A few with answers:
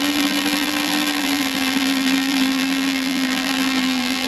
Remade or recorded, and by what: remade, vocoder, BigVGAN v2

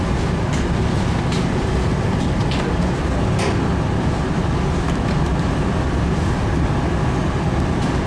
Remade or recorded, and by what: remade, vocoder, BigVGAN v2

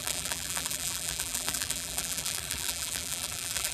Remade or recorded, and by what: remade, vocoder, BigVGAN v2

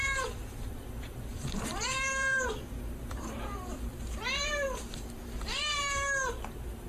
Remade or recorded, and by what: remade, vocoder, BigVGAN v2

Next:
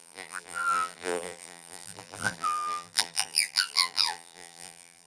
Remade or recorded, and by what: remade, vocoder, BigVGAN v2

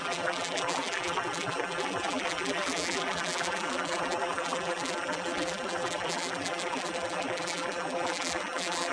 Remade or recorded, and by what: remade, vocoder, BigVGAN v2